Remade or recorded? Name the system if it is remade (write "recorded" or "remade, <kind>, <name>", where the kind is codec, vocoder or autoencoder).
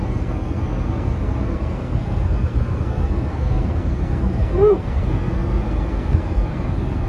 remade, codec, SNAC